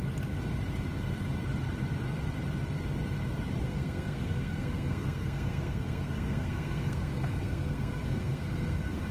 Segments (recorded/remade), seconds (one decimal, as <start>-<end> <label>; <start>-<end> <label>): 0.0-3.6 recorded; 3.6-9.1 remade